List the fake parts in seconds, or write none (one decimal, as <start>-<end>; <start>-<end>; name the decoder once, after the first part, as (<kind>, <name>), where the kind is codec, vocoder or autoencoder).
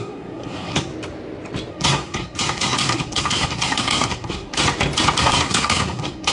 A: 0.0-0.9 (codec, SNAC); 1.7-4.6; 5.2-6.3